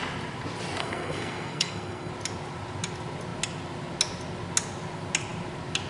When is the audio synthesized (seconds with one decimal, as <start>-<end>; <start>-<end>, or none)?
0.8-2.1